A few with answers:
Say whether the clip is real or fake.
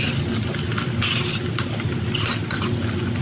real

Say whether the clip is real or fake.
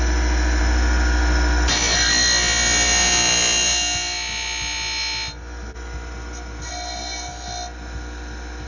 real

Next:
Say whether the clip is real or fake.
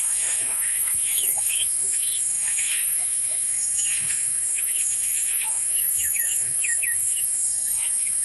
fake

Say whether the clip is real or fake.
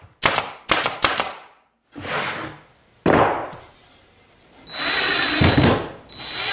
real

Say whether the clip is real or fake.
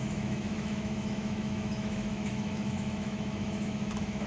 fake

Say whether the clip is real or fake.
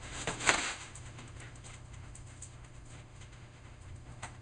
fake